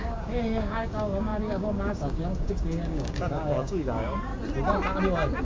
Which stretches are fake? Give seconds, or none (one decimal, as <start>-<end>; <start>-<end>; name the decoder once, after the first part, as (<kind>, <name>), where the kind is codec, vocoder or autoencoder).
0.0-4.3 (codec, DAC)